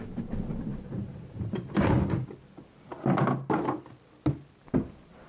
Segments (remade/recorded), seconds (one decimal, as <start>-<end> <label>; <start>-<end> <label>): 0.0-0.7 recorded; 0.7-1.9 remade; 1.9-5.3 recorded